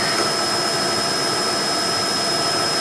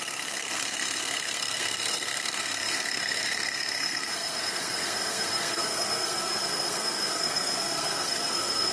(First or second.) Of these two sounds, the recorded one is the first